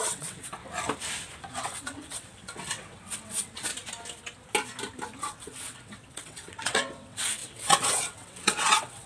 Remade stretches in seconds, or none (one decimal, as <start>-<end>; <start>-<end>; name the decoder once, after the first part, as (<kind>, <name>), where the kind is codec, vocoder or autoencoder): 0.0-0.6 (vocoder, WaveNeXt); 1.6-3.7; 5.2-9.1